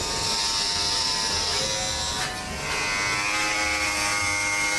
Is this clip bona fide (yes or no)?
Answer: yes